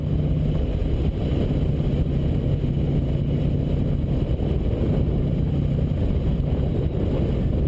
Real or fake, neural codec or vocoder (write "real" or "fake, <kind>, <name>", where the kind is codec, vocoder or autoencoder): real